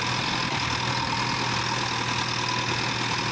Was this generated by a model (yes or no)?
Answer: no